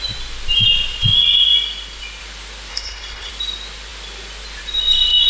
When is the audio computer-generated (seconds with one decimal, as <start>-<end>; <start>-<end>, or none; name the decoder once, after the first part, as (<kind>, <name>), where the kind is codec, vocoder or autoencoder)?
2.7-3.3 (codec, HILCodec)